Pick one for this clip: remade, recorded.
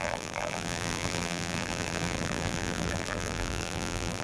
remade